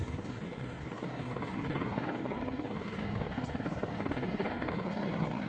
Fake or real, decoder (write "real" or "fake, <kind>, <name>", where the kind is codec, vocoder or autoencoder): fake, codec, SNAC